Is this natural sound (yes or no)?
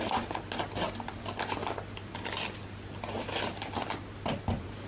yes